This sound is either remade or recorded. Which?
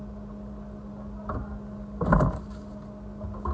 recorded